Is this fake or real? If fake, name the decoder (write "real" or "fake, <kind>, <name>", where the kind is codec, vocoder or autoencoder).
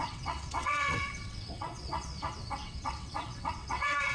fake, vocoder, WaveNeXt